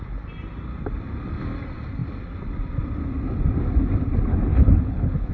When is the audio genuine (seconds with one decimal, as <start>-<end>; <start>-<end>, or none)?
0.0-4.3

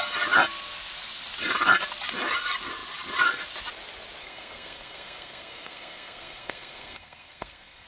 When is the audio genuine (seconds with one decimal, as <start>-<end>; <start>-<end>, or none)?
0.0-4.2

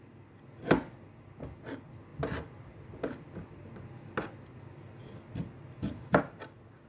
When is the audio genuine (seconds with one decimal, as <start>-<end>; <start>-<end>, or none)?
0.0-6.9